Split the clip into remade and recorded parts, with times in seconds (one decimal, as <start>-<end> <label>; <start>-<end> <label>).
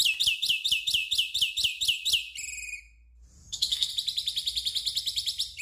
0.0-3.4 recorded; 3.4-3.9 remade; 3.9-5.6 recorded